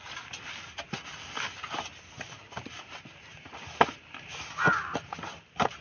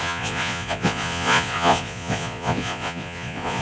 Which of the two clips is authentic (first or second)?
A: first